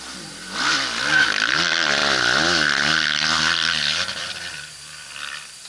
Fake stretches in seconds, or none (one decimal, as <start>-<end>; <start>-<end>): none